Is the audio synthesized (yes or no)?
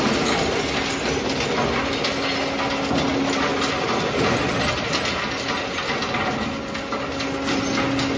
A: no